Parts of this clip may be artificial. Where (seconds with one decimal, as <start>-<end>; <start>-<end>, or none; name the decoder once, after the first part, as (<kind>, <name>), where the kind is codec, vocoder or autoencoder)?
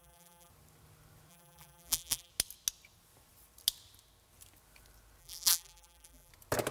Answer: 0.0-0.5 (vocoder, BigVGAN v2); 1.3-2.3; 5.2-6.3